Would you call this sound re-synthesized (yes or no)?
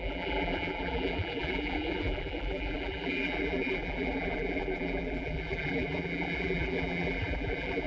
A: yes